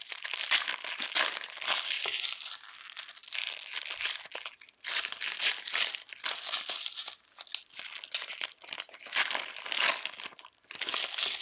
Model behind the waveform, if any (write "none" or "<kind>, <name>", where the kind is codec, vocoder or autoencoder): none